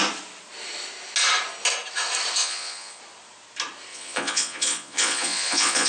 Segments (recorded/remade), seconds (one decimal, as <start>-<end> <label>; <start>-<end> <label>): 0.0-2.4 recorded; 2.4-3.0 remade; 3.0-3.9 recorded; 3.9-5.9 remade